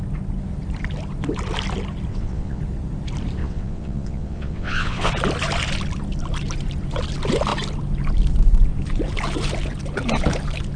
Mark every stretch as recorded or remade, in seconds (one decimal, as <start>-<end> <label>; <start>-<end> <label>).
0.0-2.1 recorded; 2.1-2.6 remade; 2.6-3.4 recorded; 3.4-5.1 remade; 5.1-10.8 recorded